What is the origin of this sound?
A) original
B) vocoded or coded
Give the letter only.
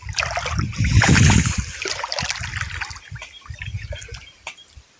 A